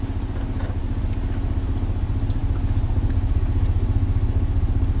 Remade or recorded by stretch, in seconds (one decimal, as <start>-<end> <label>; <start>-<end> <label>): 0.0-5.0 recorded